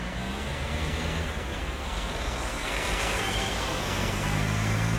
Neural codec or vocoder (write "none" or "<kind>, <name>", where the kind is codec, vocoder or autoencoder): codec, SNAC